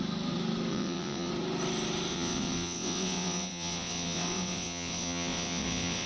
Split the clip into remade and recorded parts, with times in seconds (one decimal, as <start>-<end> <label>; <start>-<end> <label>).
0.0-0.7 recorded; 0.7-1.3 remade; 1.3-2.1 recorded; 2.1-6.1 remade